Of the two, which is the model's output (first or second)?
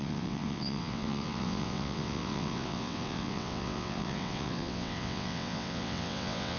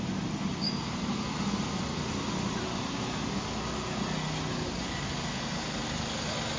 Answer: first